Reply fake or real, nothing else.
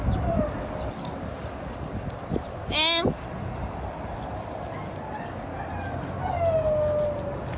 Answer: real